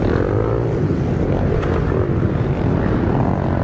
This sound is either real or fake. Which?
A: real